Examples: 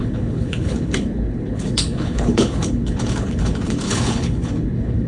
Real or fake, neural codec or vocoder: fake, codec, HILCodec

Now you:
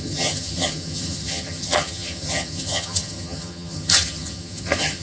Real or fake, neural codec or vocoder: fake, vocoder, HiFi-GAN